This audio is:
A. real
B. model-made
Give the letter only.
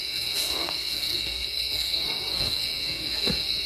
B